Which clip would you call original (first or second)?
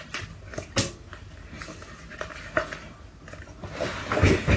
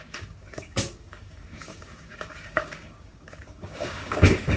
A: first